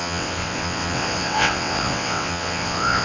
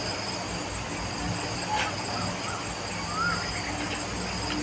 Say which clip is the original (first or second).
second